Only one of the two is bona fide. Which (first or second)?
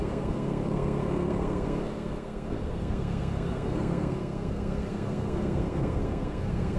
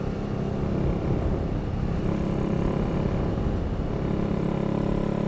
second